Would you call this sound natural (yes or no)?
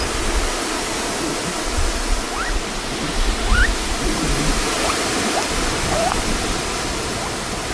yes